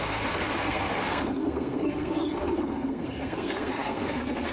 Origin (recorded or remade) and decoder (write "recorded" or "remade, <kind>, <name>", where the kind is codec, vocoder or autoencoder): remade, codec, SNAC